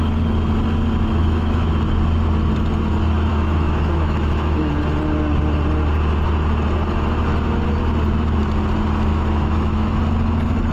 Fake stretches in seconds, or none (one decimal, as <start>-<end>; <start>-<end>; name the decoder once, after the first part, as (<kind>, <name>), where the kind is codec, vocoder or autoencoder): 1.2-1.7 (autoencoder, DAC-VAE); 3.3-4.7; 9.1-10.0